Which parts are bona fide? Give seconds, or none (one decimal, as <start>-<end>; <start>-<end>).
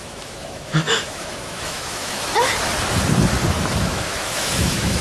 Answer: 2.3-3.8